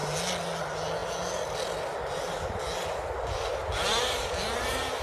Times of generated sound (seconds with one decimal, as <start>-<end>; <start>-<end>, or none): none